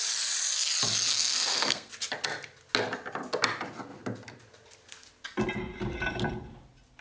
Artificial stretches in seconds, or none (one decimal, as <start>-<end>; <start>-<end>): 1.1-1.9